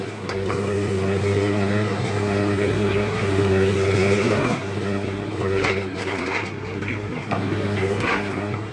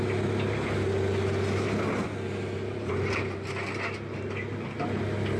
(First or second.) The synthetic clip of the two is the first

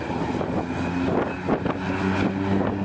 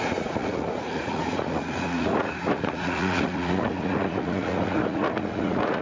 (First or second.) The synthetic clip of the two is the second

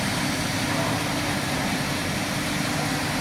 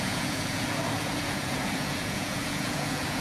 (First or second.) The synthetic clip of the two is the second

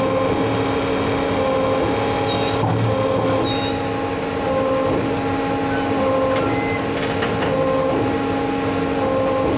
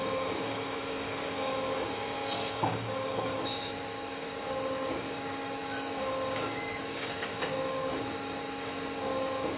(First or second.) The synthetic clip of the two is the second